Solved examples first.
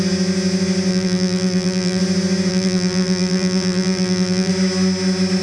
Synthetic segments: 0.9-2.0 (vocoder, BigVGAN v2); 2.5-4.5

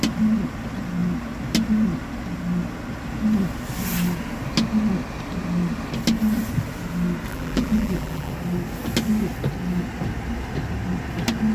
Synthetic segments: 7.3-8.3 (vocoder, BigVGAN v2)

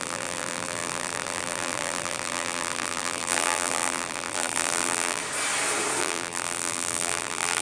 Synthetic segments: 0.0-5.2 (vocoder, BigVGAN v2); 6.0-7.6

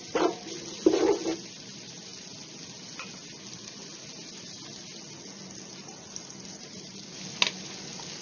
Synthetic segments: none

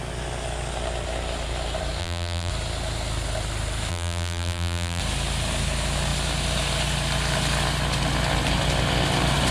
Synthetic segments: 2.0-2.5 (vocoder, BigVGAN v2); 3.9-5.0

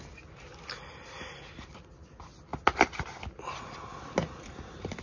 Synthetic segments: none

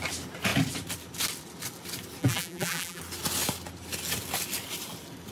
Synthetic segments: 2.2-3.0 (vocoder, BigVGAN v2)